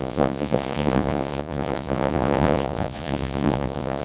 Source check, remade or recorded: remade